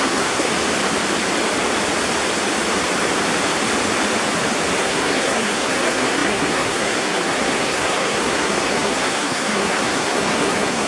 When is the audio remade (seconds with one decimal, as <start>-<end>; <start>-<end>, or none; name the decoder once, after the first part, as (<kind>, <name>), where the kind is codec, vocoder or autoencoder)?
0.0-0.5 (codec, SNAC); 4.8-10.9